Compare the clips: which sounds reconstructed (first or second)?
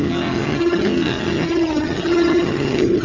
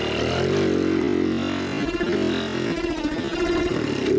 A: first